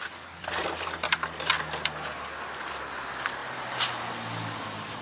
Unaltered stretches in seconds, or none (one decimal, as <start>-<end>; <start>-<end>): 0.0-0.6; 1.5-3.4